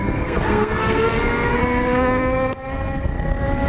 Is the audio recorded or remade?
remade